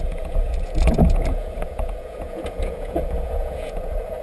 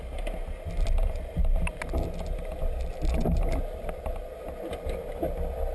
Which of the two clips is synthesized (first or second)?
first